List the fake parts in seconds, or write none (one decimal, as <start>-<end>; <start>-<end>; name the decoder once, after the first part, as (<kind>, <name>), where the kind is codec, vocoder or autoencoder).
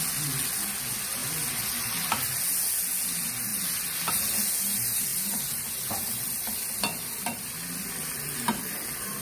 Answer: 3.5-4.1 (vocoder, BigVGAN v2); 5.1-7.9